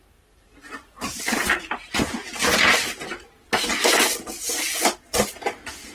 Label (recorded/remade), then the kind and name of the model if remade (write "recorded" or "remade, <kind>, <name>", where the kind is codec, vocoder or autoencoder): recorded